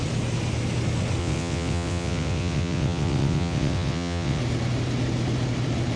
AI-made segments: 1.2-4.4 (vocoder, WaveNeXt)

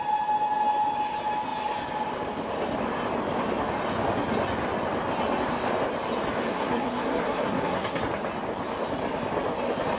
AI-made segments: 6.5-8.0 (codec, SNAC)

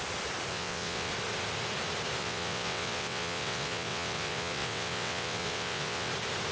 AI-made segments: 0.5-1.1 (vocoder, WaveNeXt); 2.2-6.1